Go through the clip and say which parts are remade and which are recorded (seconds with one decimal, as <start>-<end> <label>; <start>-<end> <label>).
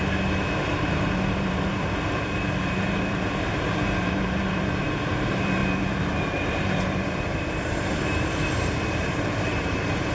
0.0-0.6 recorded; 0.6-10.1 remade